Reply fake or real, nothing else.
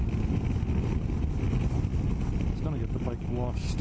real